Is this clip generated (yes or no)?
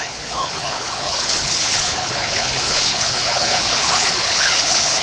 yes